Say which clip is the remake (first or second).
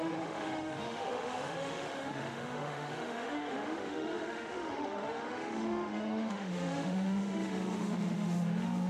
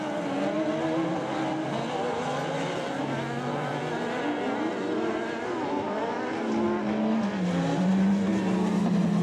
first